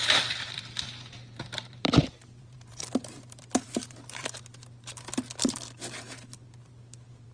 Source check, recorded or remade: remade